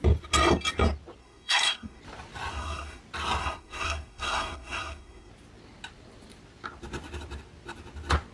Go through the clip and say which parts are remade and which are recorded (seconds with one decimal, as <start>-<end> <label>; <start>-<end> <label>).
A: 0.0-1.2 recorded; 1.2-2.0 remade; 2.0-2.5 recorded; 2.5-3.0 remade; 3.0-3.4 recorded; 3.4-5.3 remade; 5.3-8.3 recorded